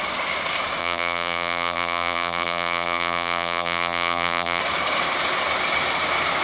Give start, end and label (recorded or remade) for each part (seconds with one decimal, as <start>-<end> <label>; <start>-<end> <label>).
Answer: 0.0-0.8 recorded; 0.8-4.6 remade; 4.6-6.4 recorded